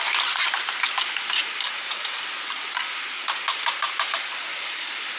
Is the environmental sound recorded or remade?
recorded